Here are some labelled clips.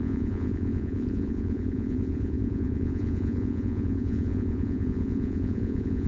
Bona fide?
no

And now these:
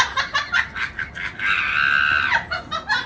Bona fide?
yes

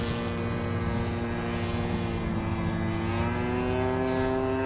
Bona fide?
yes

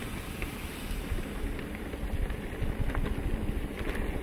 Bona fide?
yes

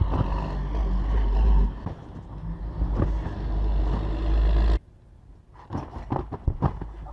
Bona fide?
yes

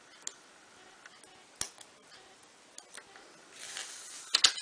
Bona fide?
yes